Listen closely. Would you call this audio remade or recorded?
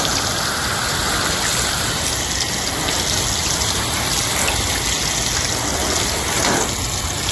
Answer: recorded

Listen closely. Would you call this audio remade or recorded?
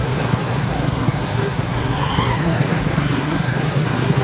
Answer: remade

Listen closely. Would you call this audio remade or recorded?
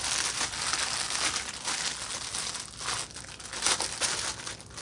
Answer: recorded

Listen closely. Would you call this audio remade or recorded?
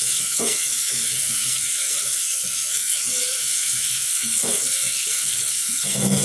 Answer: remade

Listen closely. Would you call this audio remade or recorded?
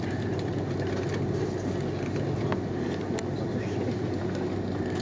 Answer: recorded